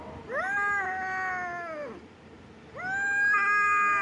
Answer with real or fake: real